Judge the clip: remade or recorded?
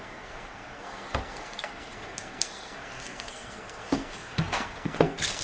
remade